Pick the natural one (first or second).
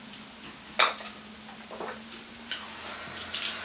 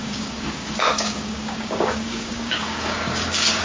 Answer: first